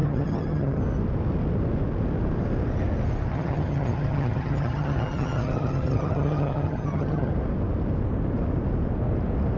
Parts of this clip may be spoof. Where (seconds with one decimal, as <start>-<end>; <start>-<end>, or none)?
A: 0.0-0.8; 3.3-7.3